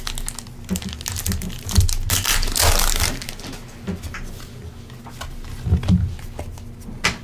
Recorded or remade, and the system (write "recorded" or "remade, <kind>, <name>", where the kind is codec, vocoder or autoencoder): recorded